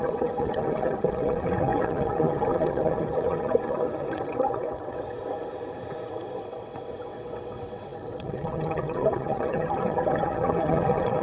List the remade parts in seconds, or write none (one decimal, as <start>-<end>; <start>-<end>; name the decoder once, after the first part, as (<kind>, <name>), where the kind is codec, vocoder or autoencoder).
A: 0.0-5.2 (vocoder, WaveNeXt); 6.4-11.2